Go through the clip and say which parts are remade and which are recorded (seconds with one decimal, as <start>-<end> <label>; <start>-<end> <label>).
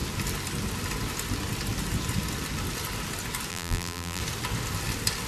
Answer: 0.0-3.5 recorded; 3.5-4.2 remade; 4.2-5.3 recorded